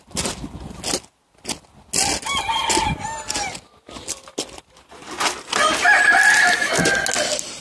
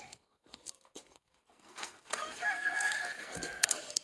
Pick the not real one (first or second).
second